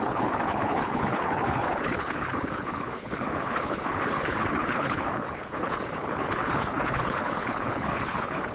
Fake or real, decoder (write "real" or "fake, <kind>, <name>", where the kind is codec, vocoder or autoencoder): fake, codec, HILCodec